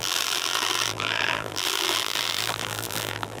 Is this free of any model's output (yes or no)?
no